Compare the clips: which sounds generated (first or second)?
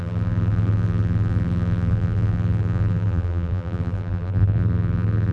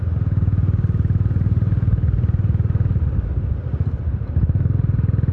first